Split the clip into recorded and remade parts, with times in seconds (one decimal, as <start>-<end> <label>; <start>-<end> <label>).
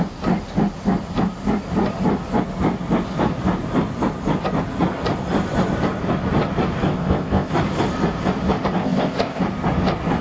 0.0-6.9 recorded; 6.9-7.5 remade; 7.5-8.8 recorded; 8.8-9.4 remade; 9.4-10.2 recorded